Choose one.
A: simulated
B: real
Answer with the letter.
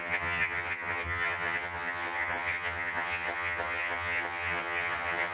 A